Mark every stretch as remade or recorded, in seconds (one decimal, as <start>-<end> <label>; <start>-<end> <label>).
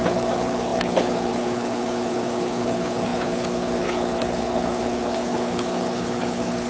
0.0-6.7 remade